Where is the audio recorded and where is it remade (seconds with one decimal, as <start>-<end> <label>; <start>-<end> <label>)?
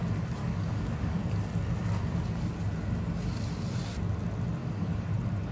0.0-0.4 recorded; 0.4-1.2 remade; 1.2-4.6 recorded; 4.6-5.1 remade; 5.1-5.5 recorded